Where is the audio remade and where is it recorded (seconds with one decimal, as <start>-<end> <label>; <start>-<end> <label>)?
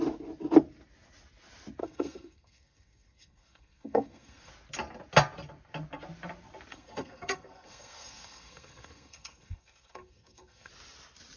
0.0-1.8 recorded; 1.8-4.5 remade; 4.5-6.7 recorded; 6.7-10.7 remade; 10.7-11.4 recorded